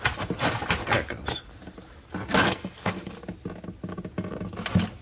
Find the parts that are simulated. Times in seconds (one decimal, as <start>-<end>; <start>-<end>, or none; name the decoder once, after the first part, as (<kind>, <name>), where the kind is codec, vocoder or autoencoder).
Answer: 2.4-3.1 (codec, SNAC)